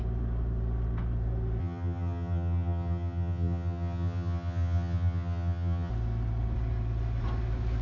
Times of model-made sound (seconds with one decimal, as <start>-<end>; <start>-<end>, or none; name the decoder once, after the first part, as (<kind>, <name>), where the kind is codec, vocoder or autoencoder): 1.6-5.9 (vocoder, HiFi-GAN)